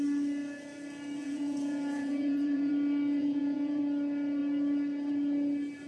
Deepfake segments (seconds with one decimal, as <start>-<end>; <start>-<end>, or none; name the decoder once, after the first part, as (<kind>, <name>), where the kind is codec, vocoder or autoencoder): 1.2-2.7 (vocoder, Vocos); 3.2-3.8